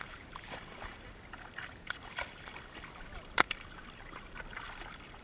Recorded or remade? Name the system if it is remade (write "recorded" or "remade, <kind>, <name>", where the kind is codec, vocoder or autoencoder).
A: remade, vocoder, BigVGAN v2